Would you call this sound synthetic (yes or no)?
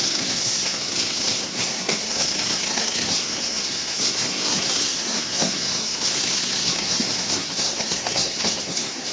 yes